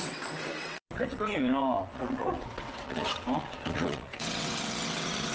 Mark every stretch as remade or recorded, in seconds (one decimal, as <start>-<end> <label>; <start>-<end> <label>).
0.0-5.3 remade